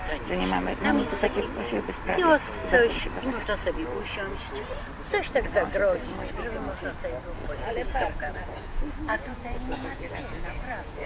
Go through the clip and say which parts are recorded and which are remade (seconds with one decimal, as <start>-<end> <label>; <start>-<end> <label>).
0.0-7.4 recorded; 7.4-11.1 remade